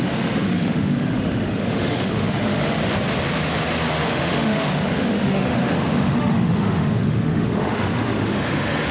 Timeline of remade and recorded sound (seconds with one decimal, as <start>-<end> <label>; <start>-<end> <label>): 0.0-2.8 remade; 2.8-4.1 recorded; 4.1-8.9 remade